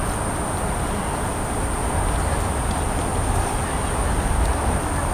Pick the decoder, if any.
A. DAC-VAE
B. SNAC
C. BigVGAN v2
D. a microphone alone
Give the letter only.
D